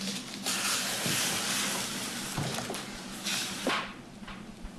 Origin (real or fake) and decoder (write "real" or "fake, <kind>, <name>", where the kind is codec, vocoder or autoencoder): fake, vocoder, BigVGAN v2